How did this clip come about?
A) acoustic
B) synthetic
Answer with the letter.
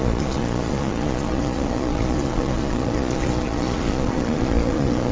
B